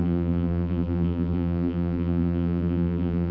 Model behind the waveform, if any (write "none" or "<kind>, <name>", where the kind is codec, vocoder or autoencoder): vocoder, BigVGAN v2